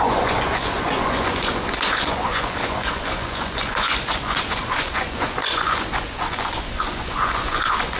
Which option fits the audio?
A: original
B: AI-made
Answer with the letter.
B